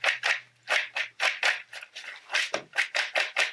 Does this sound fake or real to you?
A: real